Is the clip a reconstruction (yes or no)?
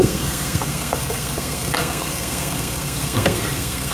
yes